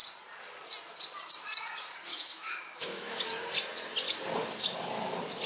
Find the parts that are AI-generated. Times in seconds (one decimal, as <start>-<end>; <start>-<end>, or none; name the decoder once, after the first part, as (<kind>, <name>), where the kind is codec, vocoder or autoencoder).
2.1-3.2 (autoencoder, DAC-VAE)